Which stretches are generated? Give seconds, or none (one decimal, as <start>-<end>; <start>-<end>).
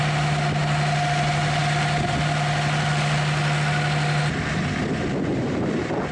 none